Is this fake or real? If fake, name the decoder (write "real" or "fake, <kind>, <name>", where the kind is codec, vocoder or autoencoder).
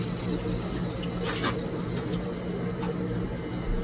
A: real